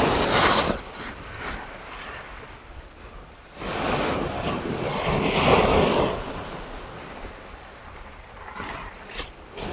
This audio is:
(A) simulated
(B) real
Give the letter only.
B